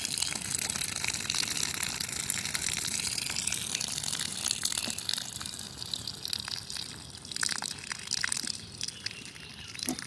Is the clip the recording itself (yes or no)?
yes